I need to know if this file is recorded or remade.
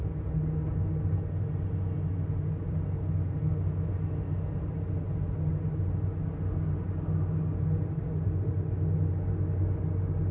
recorded